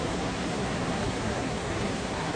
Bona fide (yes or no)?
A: no